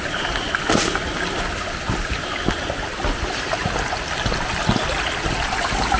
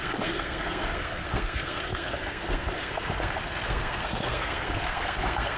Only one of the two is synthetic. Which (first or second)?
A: second